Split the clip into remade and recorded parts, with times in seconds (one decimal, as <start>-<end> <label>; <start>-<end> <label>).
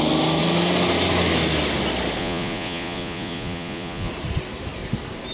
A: 0.0-2.2 recorded; 2.2-4.1 remade; 4.1-5.3 recorded